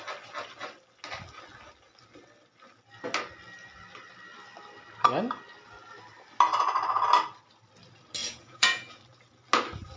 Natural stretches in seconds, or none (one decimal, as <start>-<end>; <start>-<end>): 0.0-8.2; 9.0-10.0